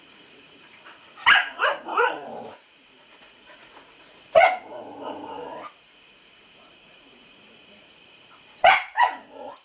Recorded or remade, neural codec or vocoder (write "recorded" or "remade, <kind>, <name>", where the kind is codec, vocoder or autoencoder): remade, vocoder, Vocos